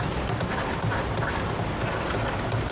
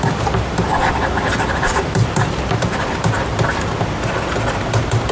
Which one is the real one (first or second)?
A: first